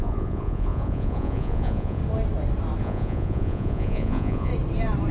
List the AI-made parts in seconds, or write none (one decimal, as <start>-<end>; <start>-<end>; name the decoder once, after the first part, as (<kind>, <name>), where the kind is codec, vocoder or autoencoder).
0.0-2.0 (vocoder, Vocos); 2.8-4.5